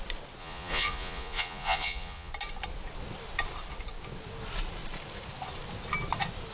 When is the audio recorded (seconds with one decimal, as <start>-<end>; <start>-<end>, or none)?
0.0-0.4; 2.3-6.5